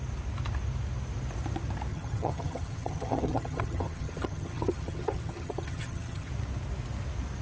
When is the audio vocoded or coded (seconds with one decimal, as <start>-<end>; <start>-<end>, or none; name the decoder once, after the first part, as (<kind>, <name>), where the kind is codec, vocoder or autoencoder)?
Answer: 1.9-6.3 (vocoder, HiFi-GAN)